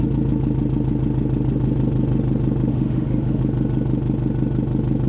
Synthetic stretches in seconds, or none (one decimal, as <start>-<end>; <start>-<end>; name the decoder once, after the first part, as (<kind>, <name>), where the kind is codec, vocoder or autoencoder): 2.7-3.4 (autoencoder, DAC-VAE)

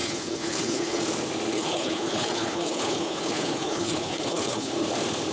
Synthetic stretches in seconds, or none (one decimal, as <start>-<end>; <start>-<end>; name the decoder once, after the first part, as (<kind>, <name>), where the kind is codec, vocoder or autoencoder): 0.0-1.0 (codec, HILCodec); 1.5-4.7